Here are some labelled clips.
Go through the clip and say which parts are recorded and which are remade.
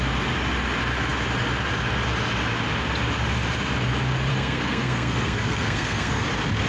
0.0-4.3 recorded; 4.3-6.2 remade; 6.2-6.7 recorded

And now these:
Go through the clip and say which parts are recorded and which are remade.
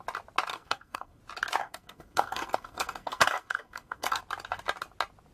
0.0-0.5 recorded; 0.5-1.2 remade; 1.2-1.6 recorded; 1.6-4.2 remade; 4.2-5.3 recorded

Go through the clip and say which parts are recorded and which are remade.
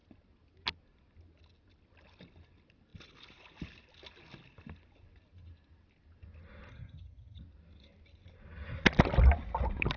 0.0-6.7 recorded; 6.7-7.4 remade; 7.4-10.0 recorded